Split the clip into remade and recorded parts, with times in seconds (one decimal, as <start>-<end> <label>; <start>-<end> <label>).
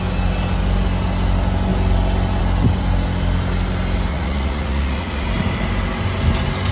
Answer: 0.0-4.1 recorded; 4.1-5.3 remade; 5.3-6.7 recorded